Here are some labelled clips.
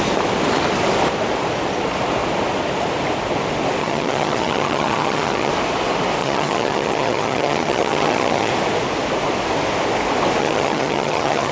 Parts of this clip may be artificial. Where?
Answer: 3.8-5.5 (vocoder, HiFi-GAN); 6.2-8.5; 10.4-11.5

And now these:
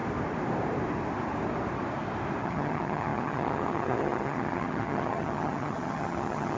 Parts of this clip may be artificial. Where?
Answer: 2.4-6.6 (vocoder, HiFi-GAN)

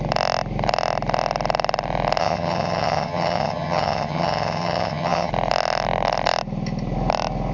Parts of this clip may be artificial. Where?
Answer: 2.2-5.3 (vocoder, HiFi-GAN)

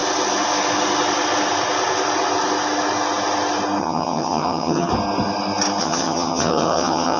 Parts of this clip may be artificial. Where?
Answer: 3.8-4.9 (vocoder, HiFi-GAN); 5.8-7.2

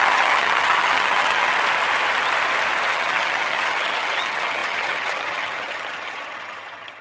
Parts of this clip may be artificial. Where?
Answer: 0.0-1.5 (vocoder, HiFi-GAN); 2.9-7.0

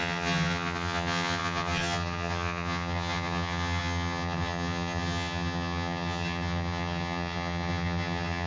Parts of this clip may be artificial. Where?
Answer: 0.0-8.5 (vocoder, HiFi-GAN)

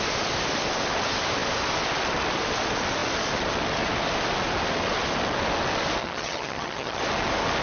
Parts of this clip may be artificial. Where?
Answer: 6.0-7.0 (vocoder, HiFi-GAN)